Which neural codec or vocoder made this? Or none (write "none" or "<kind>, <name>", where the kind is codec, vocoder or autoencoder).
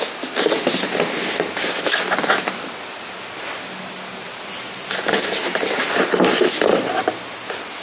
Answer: none